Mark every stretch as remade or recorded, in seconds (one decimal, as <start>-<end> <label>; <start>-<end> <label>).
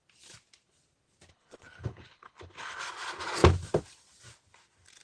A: 0.0-1.3 recorded; 1.3-2.8 remade; 2.8-5.0 recorded